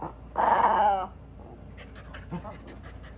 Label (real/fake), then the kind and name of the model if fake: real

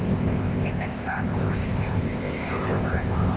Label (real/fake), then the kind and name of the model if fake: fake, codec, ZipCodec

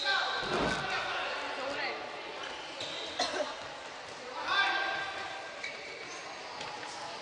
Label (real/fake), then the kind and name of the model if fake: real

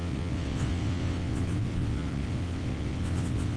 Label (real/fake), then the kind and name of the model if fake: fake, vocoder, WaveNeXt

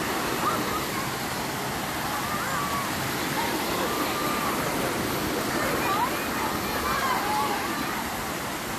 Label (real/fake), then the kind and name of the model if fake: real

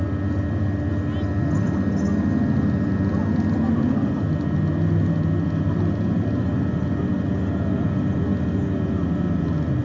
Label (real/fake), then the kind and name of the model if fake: real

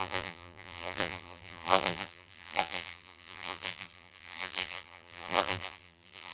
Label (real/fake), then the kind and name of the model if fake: fake, vocoder, BigVGAN v2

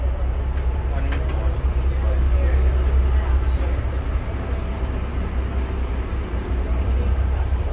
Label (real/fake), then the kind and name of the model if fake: real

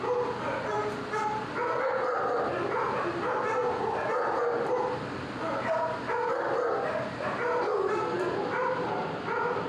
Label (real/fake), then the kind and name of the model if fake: real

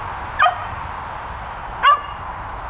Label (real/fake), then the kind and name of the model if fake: real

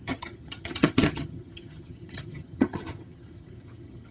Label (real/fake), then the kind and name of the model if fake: fake, vocoder, HiFi-GAN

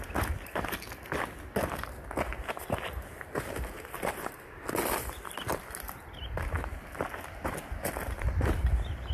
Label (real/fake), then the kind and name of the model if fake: real